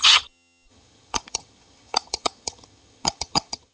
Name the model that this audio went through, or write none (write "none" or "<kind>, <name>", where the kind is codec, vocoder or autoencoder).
vocoder, HiFi-GAN